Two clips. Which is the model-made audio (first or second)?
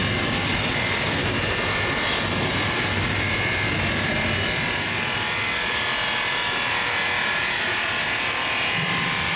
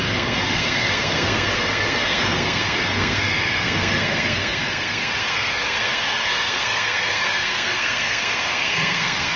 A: second